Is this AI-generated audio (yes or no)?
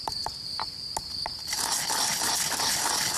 no